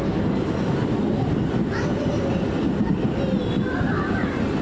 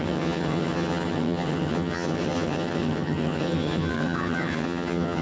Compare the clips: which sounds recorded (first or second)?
first